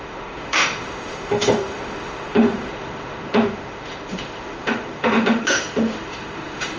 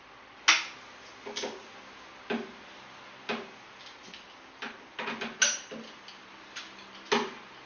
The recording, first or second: second